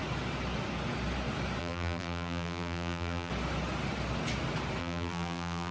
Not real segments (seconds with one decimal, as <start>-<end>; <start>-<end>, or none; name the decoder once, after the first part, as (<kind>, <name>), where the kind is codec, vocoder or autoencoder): 1.6-3.3 (vocoder, BigVGAN v2); 4.8-5.7